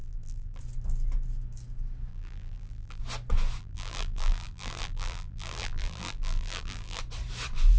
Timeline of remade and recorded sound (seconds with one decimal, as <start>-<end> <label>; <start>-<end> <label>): 0.0-0.6 remade; 0.6-2.1 recorded; 2.1-3.0 remade; 3.0-3.6 recorded; 3.6-7.0 remade; 7.0-7.8 recorded